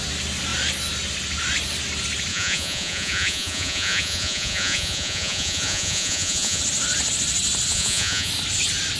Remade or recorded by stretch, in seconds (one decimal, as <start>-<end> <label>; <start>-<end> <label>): 0.0-2.3 recorded; 2.3-6.6 remade; 6.6-7.7 recorded; 7.7-8.3 remade; 8.3-9.0 recorded